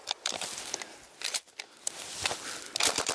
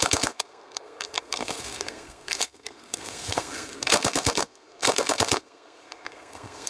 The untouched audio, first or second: first